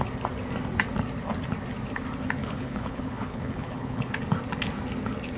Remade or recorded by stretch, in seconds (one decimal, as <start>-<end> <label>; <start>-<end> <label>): 0.0-2.4 recorded; 2.4-4.1 remade; 4.1-5.4 recorded